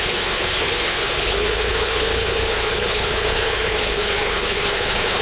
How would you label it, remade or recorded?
remade